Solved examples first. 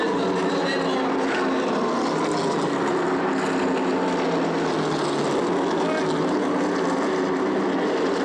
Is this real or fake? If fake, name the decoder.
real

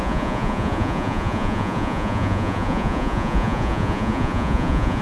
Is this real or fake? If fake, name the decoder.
fake, vocoder, Vocos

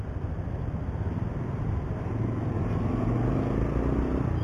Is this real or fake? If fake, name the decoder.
real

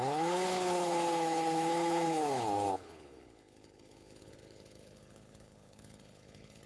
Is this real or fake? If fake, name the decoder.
fake, codec, HILCodec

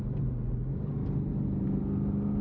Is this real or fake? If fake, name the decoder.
real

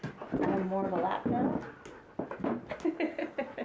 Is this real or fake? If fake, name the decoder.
real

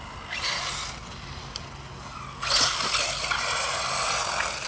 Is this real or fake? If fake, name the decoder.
real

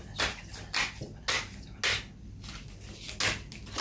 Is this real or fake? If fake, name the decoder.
real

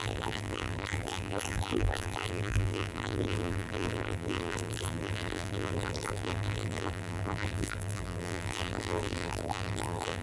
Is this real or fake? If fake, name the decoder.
fake, vocoder, BigVGAN v2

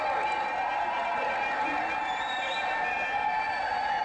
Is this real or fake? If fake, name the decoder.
real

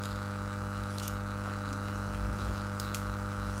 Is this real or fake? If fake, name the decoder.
fake, autoencoder, DAC-VAE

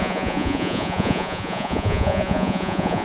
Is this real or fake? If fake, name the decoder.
fake, vocoder, Vocos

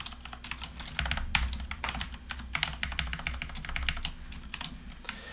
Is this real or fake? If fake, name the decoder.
real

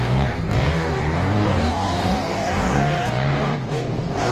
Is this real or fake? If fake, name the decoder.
fake, codec, DAC